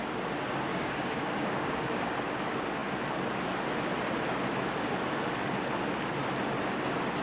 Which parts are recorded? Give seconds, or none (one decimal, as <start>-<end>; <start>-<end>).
0.0-0.7; 2.2-7.2